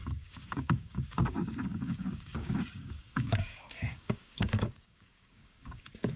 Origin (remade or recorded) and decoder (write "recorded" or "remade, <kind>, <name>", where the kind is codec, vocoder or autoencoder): remade, codec, DAC